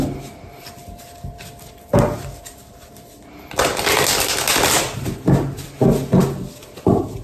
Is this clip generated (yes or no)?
no